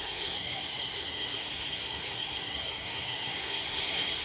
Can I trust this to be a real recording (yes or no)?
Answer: no